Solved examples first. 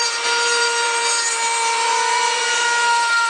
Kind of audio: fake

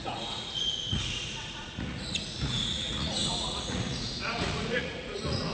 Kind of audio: fake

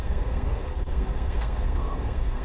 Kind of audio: fake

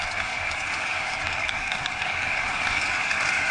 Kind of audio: fake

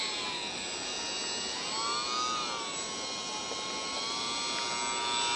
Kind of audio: real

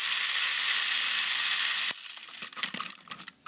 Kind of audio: real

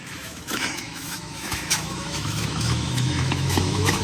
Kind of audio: fake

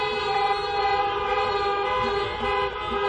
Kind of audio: real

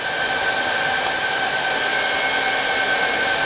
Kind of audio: real